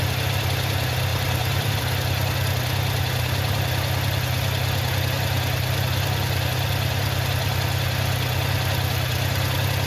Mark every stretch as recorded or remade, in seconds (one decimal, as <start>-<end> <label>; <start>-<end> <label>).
0.0-1.1 recorded; 1.1-1.7 remade; 1.7-9.9 recorded